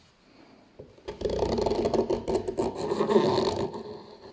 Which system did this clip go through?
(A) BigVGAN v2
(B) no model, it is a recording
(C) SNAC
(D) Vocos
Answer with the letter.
B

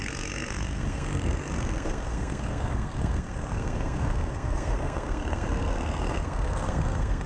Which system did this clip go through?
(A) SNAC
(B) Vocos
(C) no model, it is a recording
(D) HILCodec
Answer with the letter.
A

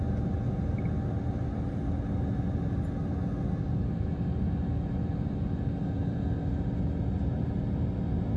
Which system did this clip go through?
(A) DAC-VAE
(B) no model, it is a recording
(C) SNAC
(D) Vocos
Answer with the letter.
B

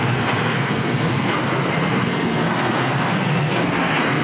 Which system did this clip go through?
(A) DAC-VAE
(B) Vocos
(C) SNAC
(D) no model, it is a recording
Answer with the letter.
C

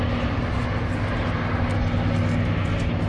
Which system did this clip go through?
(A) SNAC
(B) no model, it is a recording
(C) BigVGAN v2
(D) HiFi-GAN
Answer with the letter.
B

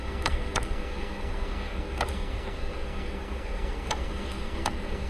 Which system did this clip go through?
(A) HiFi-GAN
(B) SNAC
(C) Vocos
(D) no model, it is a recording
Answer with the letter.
B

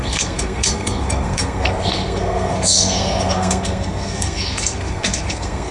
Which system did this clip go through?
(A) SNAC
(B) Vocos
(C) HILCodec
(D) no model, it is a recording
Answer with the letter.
A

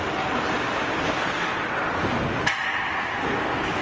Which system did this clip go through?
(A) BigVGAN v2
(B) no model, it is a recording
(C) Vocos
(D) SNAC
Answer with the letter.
B